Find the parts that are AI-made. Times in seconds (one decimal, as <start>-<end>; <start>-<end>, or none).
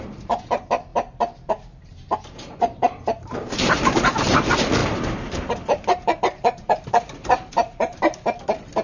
0.0-0.9; 1.9-8.8